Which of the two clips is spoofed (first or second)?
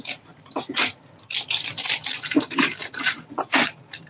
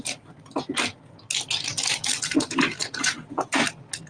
first